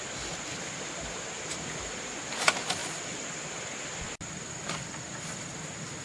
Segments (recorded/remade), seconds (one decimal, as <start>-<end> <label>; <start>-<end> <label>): 0.0-2.8 recorded; 2.8-3.8 remade; 3.8-6.0 recorded

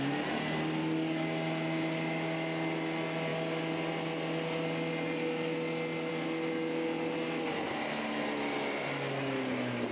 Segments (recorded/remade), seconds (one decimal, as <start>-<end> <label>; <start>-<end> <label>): 0.0-9.9 recorded

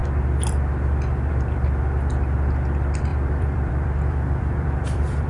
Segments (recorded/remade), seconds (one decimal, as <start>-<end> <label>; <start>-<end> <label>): 0.0-1.3 recorded; 1.3-5.3 remade